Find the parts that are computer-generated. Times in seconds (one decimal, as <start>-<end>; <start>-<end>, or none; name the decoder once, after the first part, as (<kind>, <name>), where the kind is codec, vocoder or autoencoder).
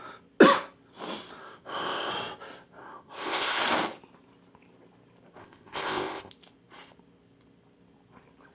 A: 1.4-2.1 (codec, ZipCodec); 2.8-3.6; 5.4-6.3